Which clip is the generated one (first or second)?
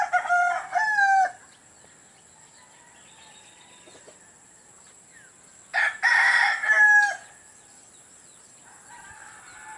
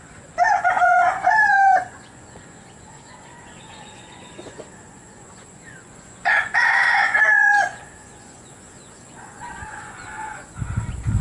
second